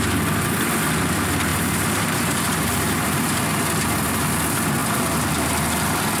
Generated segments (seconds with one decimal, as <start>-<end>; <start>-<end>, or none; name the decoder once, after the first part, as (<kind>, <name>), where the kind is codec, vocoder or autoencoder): 1.5-3.2 (vocoder, BigVGAN v2)

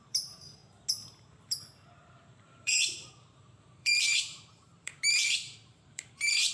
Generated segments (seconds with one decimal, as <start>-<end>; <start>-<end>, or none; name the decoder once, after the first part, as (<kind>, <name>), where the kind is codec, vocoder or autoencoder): 0.0-0.6 (vocoder, BigVGAN v2); 1.3-6.5

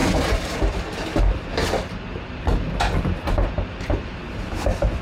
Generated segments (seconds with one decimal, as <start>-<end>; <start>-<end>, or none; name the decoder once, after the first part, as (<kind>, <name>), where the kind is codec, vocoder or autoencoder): 0.0-1.1 (vocoder, BigVGAN v2); 1.5-4.5

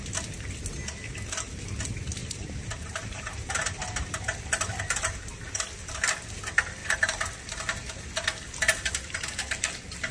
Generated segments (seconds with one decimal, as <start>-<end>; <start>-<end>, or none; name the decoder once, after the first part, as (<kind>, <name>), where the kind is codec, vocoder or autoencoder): 2.2-4.8 (vocoder, BigVGAN v2); 6.8-8.0

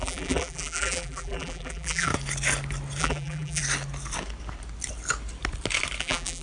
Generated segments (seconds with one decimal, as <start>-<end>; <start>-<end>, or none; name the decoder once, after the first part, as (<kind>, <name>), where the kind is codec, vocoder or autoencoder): 0.0-2.1 (vocoder, BigVGAN v2); 3.0-3.6; 6.0-6.4

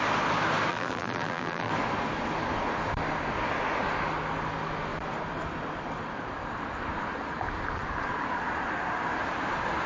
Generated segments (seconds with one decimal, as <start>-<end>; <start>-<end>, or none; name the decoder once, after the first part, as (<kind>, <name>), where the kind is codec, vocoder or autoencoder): 0.7-1.7 (vocoder, BigVGAN v2)